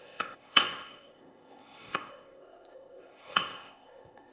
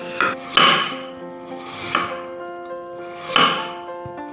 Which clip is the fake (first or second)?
first